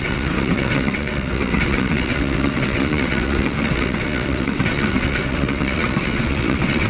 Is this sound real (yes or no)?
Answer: no